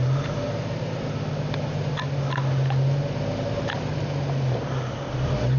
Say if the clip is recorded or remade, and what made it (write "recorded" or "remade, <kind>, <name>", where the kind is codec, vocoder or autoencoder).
recorded